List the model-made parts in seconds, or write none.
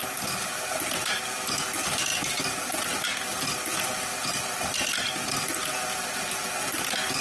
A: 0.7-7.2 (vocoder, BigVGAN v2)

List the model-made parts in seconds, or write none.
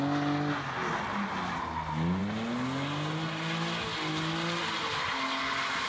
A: none